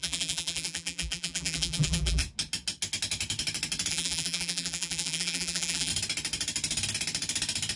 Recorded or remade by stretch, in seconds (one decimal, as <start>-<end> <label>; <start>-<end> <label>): 0.0-2.2 remade; 2.2-3.9 recorded; 3.9-5.9 remade; 5.9-7.8 recorded